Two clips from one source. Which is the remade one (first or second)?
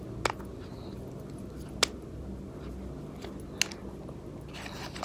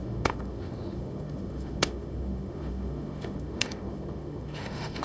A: second